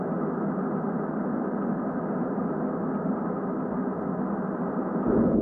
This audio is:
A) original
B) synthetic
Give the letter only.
A